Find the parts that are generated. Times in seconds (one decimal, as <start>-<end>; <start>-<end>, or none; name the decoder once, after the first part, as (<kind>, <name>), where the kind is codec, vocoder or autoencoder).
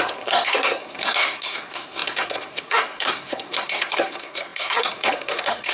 0.0-5.7 (codec, SNAC)